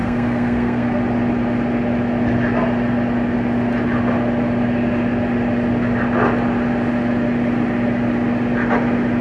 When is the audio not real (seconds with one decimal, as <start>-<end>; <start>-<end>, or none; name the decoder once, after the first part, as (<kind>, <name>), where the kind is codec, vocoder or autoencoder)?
0.0-1.0 (codec, SNAC)